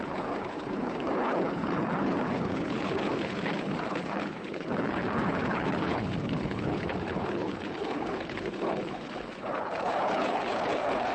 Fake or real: fake